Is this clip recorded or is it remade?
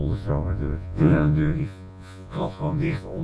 remade